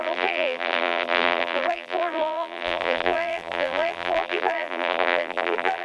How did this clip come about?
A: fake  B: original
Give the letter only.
A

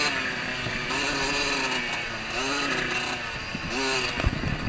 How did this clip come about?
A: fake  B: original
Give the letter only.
B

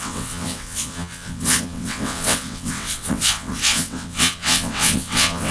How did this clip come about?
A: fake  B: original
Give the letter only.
A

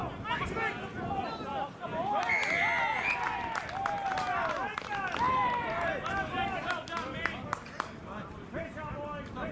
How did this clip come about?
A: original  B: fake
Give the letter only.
A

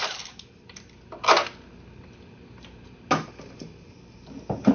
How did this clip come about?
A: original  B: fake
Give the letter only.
A